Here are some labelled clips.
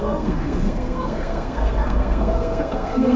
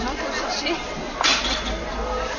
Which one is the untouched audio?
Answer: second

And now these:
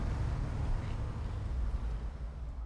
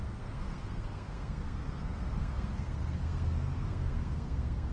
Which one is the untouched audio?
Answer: first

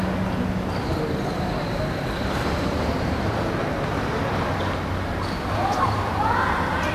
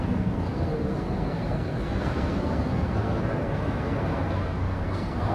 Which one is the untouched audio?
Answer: first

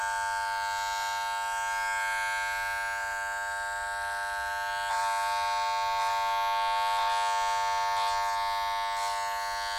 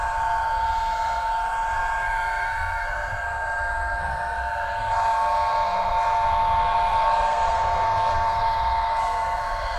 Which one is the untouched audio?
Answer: first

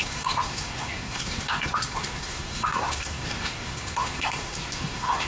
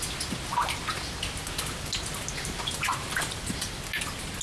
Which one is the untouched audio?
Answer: second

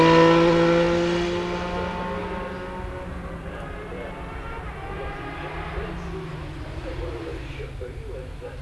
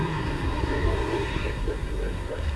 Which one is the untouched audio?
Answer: first